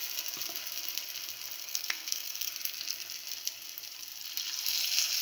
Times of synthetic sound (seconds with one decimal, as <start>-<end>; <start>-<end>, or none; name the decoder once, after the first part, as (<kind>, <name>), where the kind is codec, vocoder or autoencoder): 1.6-2.5 (codec, SNAC)